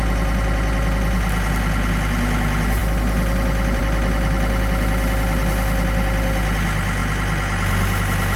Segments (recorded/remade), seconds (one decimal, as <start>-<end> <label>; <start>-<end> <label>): 0.0-8.4 recorded